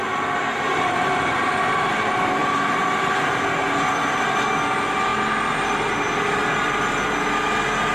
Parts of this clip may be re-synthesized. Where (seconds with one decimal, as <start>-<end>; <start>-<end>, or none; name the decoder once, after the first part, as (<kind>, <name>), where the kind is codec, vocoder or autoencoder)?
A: none